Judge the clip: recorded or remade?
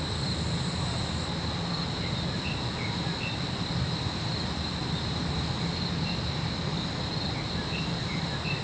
recorded